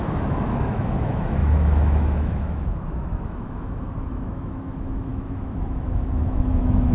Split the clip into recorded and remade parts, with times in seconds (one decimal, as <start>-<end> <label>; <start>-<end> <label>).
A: 0.0-6.9 remade